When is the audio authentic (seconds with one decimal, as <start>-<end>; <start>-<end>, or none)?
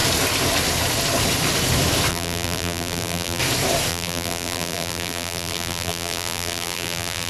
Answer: 0.0-2.1; 3.4-3.9